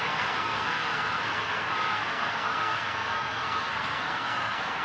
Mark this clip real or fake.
fake